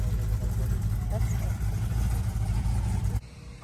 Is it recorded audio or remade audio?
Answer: recorded